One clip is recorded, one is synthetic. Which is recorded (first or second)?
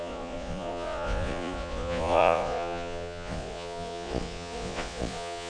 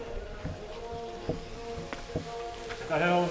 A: second